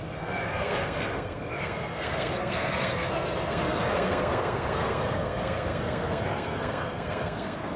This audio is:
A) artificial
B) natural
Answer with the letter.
A